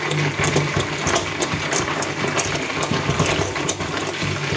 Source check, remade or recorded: recorded